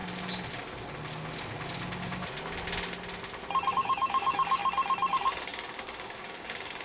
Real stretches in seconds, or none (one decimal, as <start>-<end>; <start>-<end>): 0.0-3.7; 4.6-5.1